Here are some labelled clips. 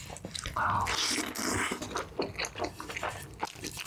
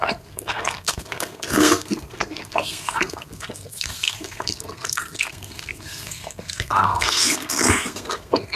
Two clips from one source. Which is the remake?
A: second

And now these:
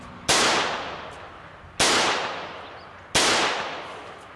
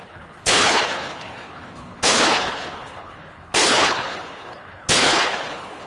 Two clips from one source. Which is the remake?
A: second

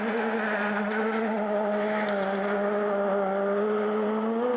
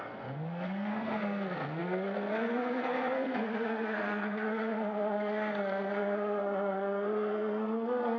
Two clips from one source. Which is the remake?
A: second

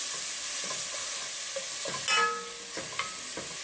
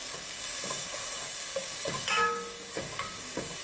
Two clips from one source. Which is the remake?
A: second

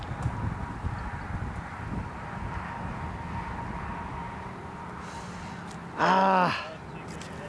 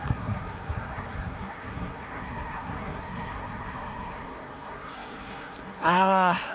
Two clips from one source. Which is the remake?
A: second